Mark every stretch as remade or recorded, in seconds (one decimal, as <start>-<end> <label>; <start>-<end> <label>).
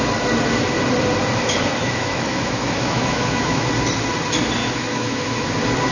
0.0-1.8 recorded; 1.8-3.7 remade; 3.7-4.6 recorded; 4.6-5.5 remade; 5.5-5.9 recorded